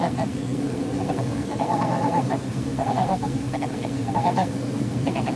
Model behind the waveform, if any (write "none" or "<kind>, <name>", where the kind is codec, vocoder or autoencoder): codec, SNAC